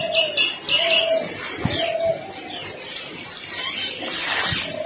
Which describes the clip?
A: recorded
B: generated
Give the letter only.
A